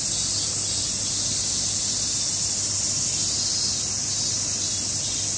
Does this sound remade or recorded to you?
recorded